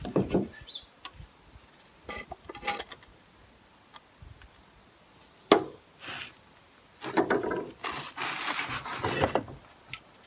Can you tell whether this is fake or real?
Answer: real